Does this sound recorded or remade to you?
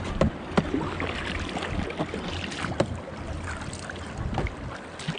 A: recorded